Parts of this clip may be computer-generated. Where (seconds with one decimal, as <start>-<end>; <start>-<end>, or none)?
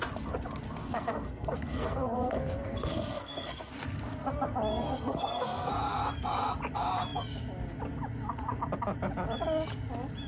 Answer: 0.8-3.7; 4.7-5.7